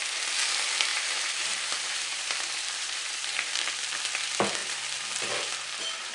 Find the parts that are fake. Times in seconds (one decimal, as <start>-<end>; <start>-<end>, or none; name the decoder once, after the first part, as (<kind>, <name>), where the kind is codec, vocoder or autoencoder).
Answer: 0.9-3.6 (vocoder, BigVGAN v2)